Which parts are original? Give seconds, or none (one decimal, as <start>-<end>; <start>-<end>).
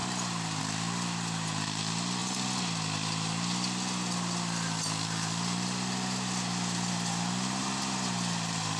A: 0.0-8.8